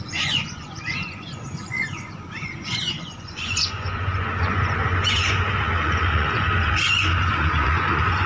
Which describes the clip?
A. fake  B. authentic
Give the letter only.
A